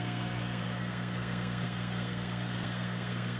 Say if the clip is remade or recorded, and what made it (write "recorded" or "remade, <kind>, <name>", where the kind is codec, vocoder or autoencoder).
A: remade, codec, SNAC